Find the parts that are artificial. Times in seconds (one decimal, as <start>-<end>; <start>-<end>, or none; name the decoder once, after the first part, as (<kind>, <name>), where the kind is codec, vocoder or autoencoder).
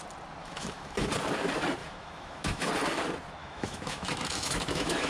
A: 0.4-1.1 (autoencoder, DAC-VAE); 1.8-2.7; 3.4-5.1